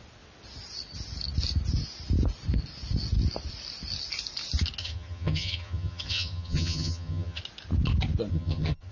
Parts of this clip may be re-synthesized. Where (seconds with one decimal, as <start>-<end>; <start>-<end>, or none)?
4.8-7.4; 8.3-8.9